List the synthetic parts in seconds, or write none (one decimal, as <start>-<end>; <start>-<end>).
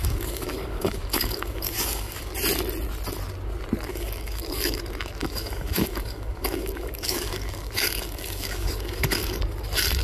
0.0-2.3; 3.9-4.8; 5.2-9.4